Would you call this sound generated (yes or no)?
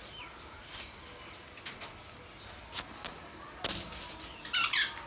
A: no